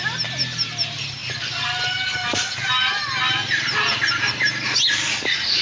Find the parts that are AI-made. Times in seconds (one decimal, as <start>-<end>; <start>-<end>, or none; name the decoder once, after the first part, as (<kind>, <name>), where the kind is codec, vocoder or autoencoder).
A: none

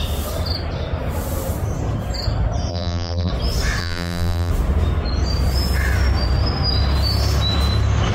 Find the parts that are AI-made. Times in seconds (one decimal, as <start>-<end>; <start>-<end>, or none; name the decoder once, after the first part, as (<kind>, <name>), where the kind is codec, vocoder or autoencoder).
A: 2.7-3.3 (vocoder, BigVGAN v2); 3.8-4.5

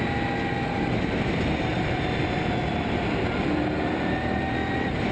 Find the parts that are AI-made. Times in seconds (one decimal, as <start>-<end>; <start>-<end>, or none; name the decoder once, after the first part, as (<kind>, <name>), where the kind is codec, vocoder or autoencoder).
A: 1.7-5.1 (vocoder, BigVGAN v2)